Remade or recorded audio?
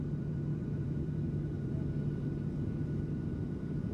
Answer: remade